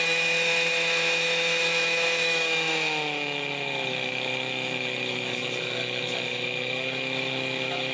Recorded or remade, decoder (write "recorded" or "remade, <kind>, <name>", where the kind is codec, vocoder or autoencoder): remade, autoencoder, DAC-VAE